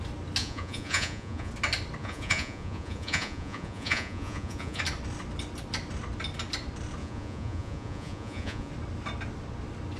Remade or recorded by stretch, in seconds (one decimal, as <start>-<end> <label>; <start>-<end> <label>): 0.0-0.4 recorded; 0.4-1.5 remade; 1.5-2.0 recorded; 2.0-4.8 remade; 4.8-7.0 recorded; 7.0-8.7 remade; 8.7-10.0 recorded